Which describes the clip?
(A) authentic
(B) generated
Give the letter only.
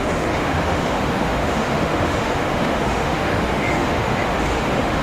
B